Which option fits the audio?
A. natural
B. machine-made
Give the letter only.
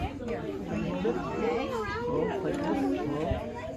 A